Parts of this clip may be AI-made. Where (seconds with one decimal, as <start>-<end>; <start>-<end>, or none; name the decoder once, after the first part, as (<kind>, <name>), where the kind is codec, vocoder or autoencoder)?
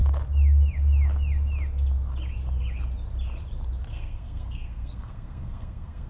3.9-6.1 (codec, SNAC)